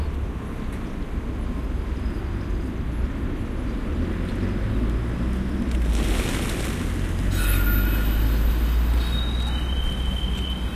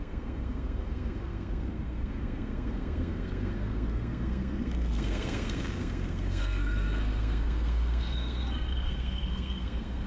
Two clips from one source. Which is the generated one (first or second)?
second